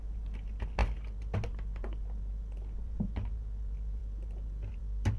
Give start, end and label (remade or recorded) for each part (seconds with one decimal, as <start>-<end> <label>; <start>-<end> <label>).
0.0-5.2 recorded